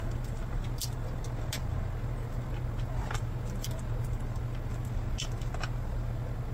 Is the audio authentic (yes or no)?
yes